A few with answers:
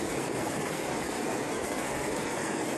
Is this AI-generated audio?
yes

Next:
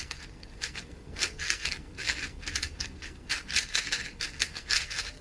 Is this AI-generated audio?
yes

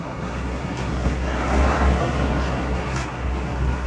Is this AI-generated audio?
yes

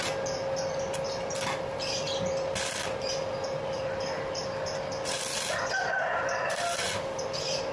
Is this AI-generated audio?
no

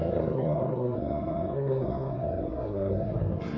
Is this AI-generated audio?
yes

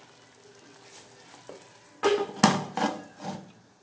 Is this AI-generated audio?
no